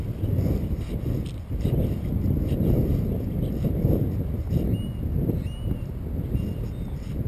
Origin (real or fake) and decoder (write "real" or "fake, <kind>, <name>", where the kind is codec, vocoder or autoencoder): real